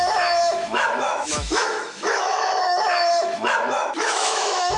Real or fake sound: fake